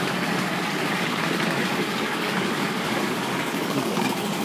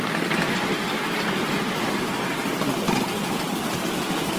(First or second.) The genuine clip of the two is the second